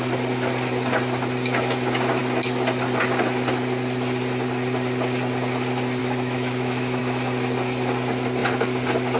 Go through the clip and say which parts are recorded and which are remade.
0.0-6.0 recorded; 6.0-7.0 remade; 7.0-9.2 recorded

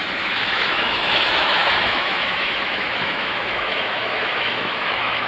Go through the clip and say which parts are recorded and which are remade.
0.0-5.3 remade

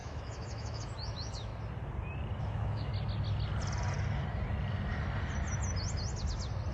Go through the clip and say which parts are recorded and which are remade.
0.0-1.5 remade; 1.5-2.4 recorded; 2.4-2.9 remade; 2.9-6.7 recorded

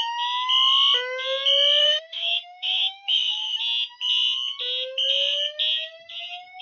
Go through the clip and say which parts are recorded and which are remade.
0.0-1.8 recorded; 1.8-3.6 remade; 3.6-6.6 recorded